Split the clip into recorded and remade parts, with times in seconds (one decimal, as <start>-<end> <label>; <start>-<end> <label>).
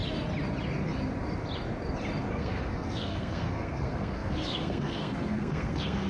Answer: 0.0-2.3 recorded; 2.3-6.1 remade